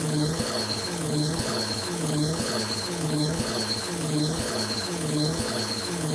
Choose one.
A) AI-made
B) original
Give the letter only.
A